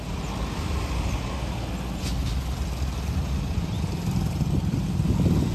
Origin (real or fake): real